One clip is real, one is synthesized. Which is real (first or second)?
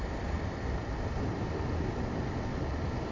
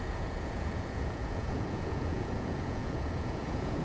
first